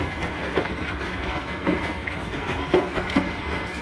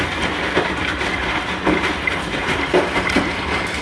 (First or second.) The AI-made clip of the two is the first